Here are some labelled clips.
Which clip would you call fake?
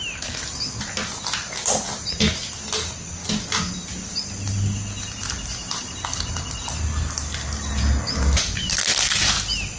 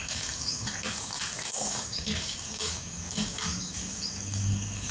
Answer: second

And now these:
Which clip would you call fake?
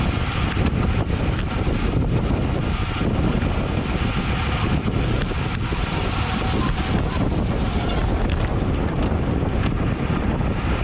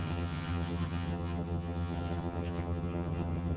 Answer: second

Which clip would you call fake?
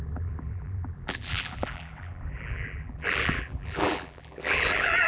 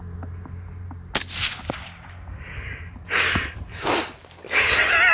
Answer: first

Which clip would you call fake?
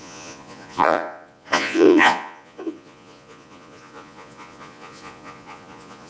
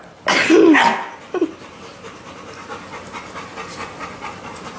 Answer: first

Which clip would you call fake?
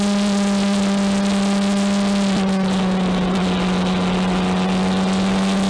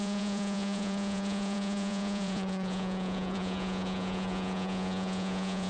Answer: second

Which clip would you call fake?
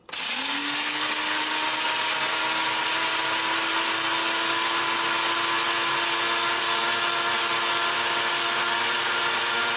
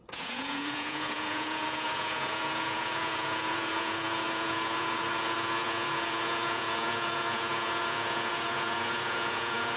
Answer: second